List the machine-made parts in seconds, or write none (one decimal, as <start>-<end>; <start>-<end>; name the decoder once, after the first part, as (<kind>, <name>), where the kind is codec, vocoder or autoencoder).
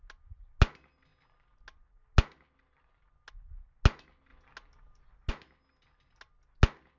none